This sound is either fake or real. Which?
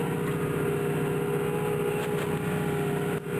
real